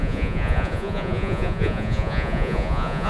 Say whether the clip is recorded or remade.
remade